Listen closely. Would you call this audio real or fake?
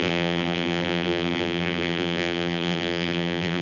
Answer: fake